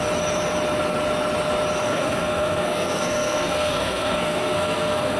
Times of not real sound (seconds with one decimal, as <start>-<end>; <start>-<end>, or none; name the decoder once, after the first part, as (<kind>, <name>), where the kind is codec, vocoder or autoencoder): 1.9-5.2 (codec, SNAC)